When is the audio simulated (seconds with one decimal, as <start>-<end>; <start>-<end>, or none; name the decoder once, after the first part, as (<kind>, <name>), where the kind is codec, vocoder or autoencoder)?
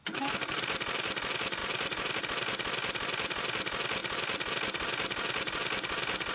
1.6-2.2 (vocoder, BigVGAN v2); 4.0-4.5